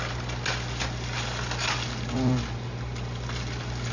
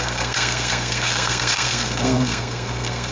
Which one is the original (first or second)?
first